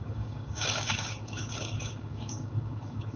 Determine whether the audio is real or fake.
fake